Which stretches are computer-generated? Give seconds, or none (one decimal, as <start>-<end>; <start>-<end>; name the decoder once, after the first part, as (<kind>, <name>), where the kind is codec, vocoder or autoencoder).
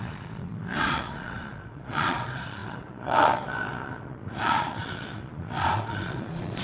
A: 0.0-6.6 (vocoder, Vocos)